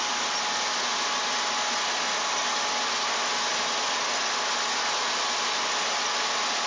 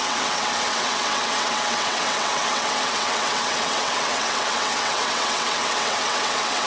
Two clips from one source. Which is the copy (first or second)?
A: second